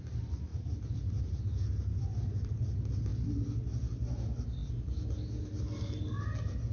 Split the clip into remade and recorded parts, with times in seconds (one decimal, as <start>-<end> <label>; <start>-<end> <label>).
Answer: 0.0-0.5 recorded; 0.5-1.1 remade; 1.1-6.7 recorded